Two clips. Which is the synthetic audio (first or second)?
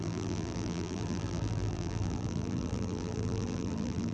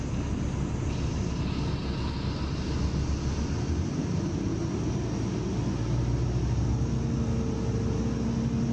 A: first